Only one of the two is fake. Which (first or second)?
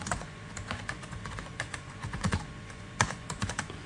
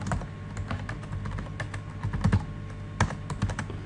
first